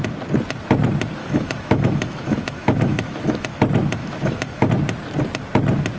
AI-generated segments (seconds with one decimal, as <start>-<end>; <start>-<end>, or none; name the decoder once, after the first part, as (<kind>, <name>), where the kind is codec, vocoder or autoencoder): 1.2-3.6 (autoencoder, DAC-VAE); 4.0-4.7